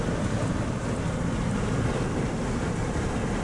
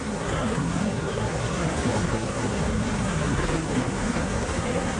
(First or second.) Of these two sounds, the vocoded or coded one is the second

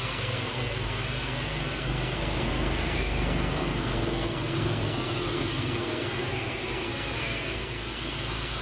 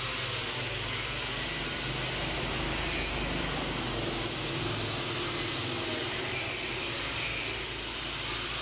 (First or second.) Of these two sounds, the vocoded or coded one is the first